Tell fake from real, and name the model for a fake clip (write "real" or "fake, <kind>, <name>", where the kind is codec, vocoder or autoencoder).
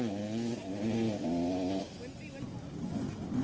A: real